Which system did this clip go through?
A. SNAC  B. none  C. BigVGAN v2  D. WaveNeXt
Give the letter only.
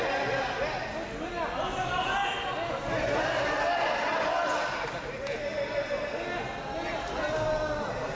B